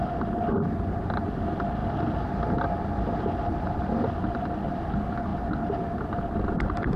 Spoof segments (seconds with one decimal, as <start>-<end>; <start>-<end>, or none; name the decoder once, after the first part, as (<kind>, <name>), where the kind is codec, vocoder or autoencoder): none